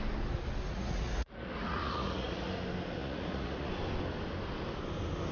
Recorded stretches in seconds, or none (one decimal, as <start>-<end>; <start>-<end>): 0.0-0.7; 2.5-3.0; 3.7-5.3